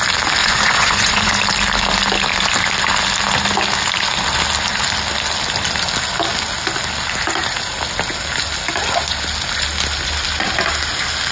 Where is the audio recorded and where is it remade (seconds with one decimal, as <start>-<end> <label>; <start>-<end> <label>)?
0.0-0.4 recorded; 0.4-1.3 remade; 1.3-11.3 recorded